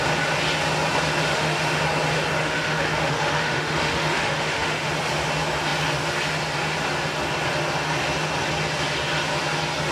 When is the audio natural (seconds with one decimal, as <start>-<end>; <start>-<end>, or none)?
0.0-1.3; 1.8-2.4; 4.9-9.9